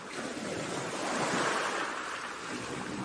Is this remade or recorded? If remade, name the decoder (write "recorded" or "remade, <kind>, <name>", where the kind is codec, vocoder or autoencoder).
recorded